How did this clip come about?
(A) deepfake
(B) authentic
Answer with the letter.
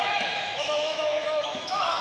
A